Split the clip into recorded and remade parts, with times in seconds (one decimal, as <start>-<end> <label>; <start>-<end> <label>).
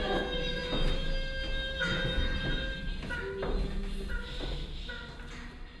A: 0.0-5.8 recorded